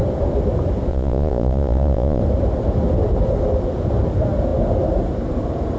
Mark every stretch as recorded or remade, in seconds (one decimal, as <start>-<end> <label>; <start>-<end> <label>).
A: 0.0-0.9 recorded; 0.9-2.2 remade; 2.2-5.8 recorded